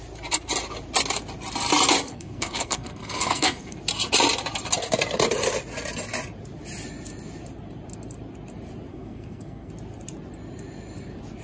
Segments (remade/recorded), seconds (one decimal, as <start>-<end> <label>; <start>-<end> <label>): 0.0-2.1 recorded; 2.1-3.8 remade; 3.8-8.9 recorded; 8.9-9.7 remade; 9.7-11.4 recorded